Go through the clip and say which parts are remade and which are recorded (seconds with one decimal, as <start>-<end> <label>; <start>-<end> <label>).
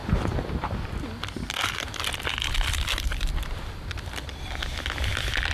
0.0-5.5 recorded